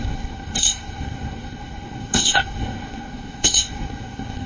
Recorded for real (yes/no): no